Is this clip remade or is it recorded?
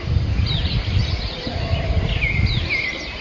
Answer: recorded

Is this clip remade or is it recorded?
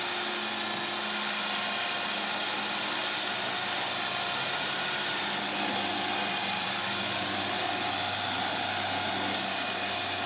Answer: recorded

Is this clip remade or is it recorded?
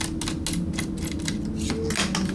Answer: recorded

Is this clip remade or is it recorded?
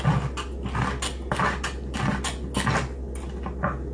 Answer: recorded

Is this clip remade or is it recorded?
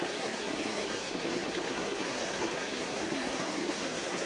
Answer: remade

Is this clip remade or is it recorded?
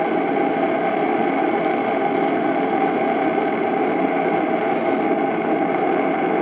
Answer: recorded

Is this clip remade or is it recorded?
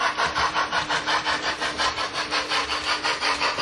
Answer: recorded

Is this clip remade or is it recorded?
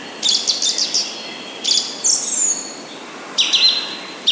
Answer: recorded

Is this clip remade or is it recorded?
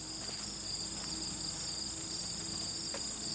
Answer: recorded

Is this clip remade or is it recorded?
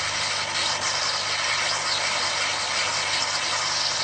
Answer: recorded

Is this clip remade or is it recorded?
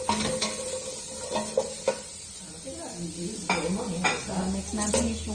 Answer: recorded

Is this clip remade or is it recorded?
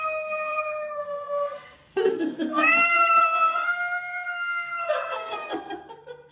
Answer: remade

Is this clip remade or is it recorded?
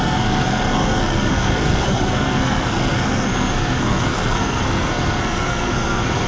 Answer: remade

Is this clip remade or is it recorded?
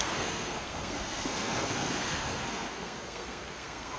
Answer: remade